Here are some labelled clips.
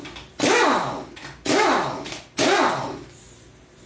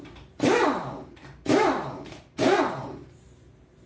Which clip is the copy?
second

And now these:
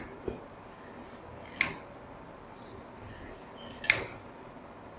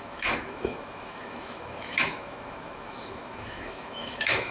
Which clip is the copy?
second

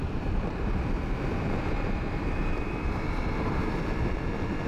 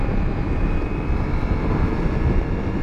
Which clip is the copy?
first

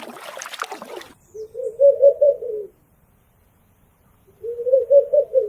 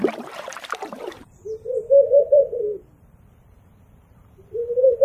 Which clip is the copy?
second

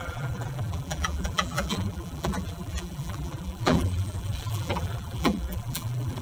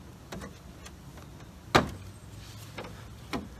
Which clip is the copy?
first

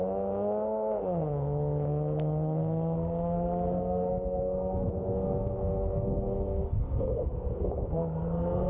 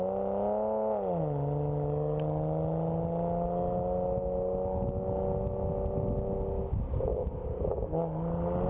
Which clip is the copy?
first